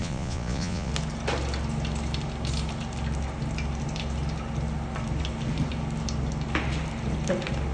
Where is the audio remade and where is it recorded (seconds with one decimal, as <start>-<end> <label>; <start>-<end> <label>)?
0.0-0.9 remade; 0.9-7.7 recorded